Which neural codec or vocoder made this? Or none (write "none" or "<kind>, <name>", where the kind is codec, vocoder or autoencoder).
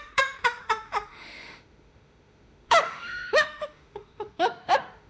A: autoencoder, DAC-VAE